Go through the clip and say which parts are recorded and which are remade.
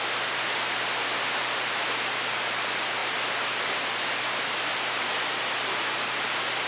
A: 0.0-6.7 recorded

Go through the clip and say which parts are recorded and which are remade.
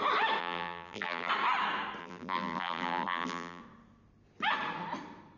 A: 0.0-0.4 recorded; 0.4-1.3 remade; 1.3-2.0 recorded; 2.0-3.6 remade; 3.6-5.4 recorded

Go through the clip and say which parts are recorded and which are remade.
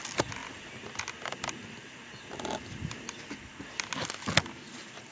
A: 0.0-5.1 recorded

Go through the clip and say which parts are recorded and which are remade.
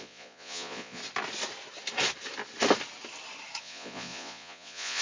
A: 0.0-1.0 remade; 1.0-3.6 recorded; 3.6-5.0 remade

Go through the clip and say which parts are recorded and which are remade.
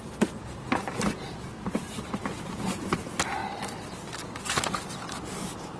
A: 0.0-5.8 recorded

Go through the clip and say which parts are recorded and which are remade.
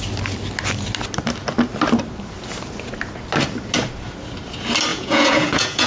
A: 0.0-4.9 recorded; 4.9-5.9 remade